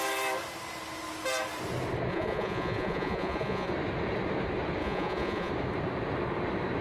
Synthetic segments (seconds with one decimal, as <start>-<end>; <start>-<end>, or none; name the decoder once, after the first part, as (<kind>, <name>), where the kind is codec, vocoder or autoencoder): 2.1-3.7 (vocoder, Vocos); 4.8-5.5